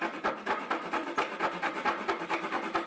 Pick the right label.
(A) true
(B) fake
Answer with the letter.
A